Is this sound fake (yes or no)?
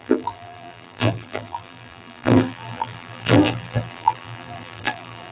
yes